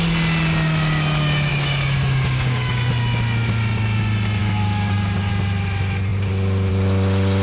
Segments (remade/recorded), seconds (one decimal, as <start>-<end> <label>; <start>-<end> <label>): 0.0-1.5 recorded; 1.5-2.9 remade; 2.9-4.4 recorded; 4.4-5.3 remade; 5.3-7.4 recorded

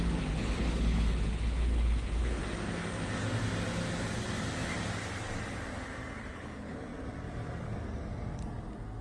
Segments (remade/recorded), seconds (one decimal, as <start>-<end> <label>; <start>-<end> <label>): 0.0-2.4 remade; 2.4-6.2 recorded; 6.2-6.9 remade; 6.9-9.0 recorded